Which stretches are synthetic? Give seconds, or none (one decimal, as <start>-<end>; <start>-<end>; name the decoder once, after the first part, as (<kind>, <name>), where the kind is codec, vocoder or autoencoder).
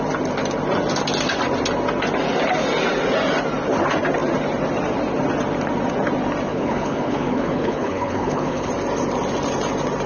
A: 6.5-8.7 (codec, HILCodec)